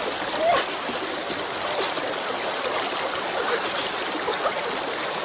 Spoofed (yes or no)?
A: no